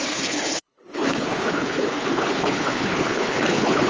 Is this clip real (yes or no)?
no